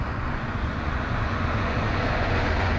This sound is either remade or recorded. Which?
remade